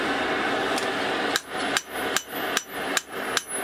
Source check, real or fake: real